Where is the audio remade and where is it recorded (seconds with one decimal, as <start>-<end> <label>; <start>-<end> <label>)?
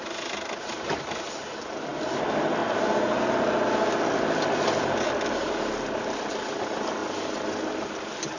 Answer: 0.0-8.4 recorded